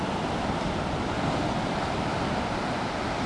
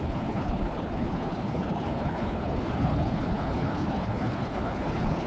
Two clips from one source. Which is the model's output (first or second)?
second